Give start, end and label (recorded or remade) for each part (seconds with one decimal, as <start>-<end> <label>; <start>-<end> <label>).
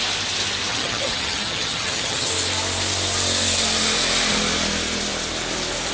0.0-0.7 recorded; 0.7-2.3 remade; 2.3-5.9 recorded